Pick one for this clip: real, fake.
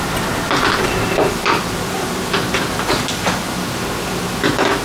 real